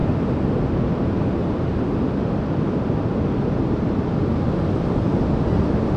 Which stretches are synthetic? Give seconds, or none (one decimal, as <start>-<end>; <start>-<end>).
none